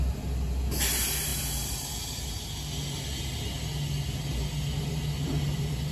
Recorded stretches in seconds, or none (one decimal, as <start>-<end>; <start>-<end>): 0.0-5.9